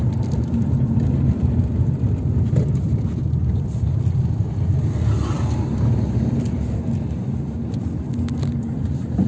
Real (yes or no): yes